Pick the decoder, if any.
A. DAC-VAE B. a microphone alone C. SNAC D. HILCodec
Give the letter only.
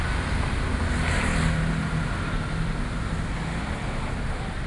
B